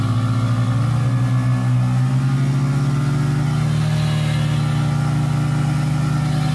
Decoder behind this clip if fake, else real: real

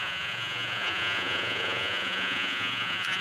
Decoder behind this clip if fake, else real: fake, vocoder, Vocos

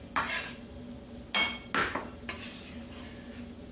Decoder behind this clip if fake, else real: real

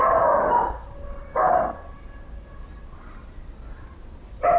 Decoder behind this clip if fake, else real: real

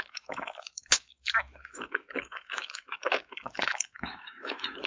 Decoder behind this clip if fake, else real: fake, autoencoder, DAC-VAE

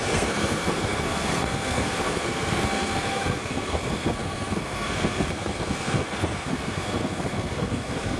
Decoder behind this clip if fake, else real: fake, codec, SNAC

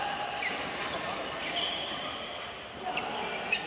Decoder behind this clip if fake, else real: real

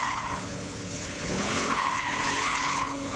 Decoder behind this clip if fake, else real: fake, codec, HILCodec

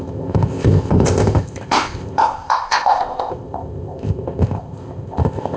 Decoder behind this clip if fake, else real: fake, codec, ZipCodec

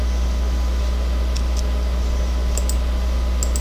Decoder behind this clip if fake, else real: real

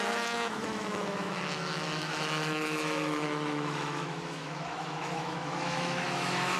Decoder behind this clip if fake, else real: fake, autoencoder, DAC-VAE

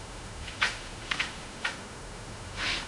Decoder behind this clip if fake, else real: fake, autoencoder, DAC-VAE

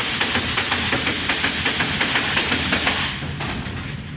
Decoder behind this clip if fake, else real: real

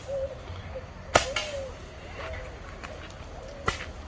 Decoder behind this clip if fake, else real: real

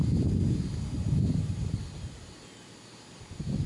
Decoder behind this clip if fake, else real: real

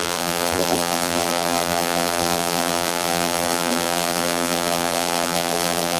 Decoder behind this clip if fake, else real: fake, vocoder, BigVGAN v2